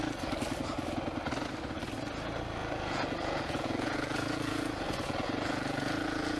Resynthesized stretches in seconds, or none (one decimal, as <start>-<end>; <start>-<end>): 2.6-6.4